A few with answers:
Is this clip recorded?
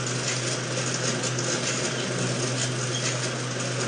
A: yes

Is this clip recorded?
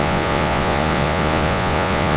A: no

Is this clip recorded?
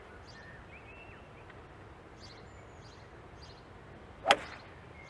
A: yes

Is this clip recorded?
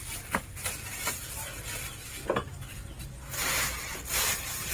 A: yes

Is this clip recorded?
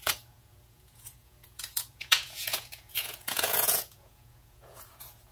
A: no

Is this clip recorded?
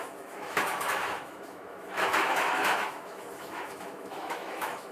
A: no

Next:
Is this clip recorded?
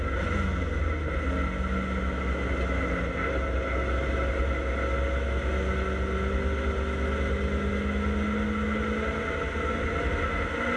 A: yes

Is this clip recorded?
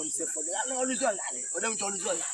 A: yes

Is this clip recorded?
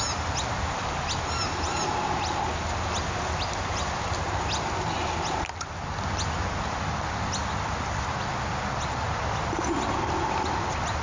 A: yes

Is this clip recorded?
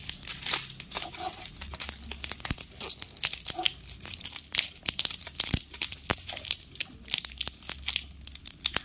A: yes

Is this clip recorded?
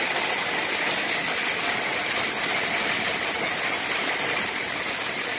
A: yes